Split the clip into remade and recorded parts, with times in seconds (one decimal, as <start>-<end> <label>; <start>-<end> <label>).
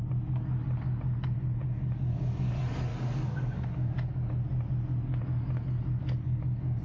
0.0-1.6 recorded; 1.6-2.5 remade; 2.5-2.9 recorded; 2.9-4.3 remade; 4.3-6.0 recorded; 6.0-6.8 remade